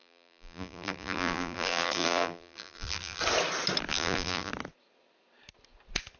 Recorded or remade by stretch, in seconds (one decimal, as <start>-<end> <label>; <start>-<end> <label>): 0.0-3.2 remade; 3.2-3.9 recorded; 3.9-4.5 remade; 4.5-6.2 recorded